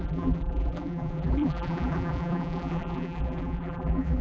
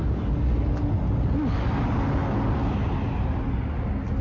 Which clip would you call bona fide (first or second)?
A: second